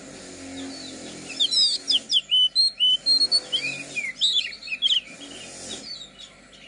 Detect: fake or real real